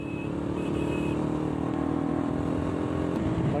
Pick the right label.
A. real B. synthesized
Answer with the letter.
B